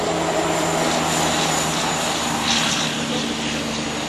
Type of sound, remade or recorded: recorded